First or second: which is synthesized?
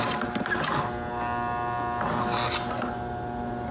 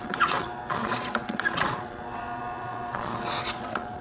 second